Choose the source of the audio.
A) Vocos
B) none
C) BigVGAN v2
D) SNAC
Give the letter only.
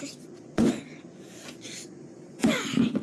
A